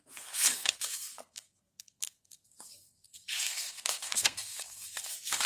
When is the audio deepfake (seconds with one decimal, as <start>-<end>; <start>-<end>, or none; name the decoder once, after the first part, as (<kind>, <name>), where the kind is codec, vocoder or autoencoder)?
0.0-5.5 (codec, SNAC)